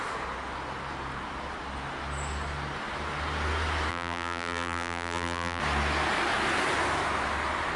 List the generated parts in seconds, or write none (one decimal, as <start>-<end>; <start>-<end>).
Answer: 3.9-5.6